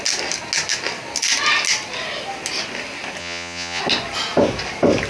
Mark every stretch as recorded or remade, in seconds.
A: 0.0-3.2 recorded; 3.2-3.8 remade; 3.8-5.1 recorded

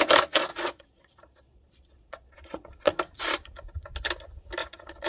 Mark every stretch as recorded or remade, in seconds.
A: 0.0-0.5 recorded; 0.5-3.0 remade; 3.0-4.6 recorded; 4.6-5.1 remade

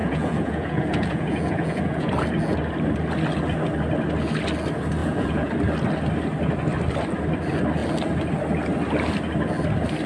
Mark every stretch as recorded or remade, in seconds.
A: 0.0-2.1 remade; 2.1-5.0 recorded; 5.0-5.5 remade; 5.5-10.1 recorded